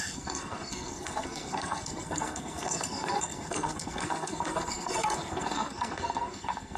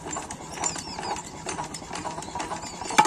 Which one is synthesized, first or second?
first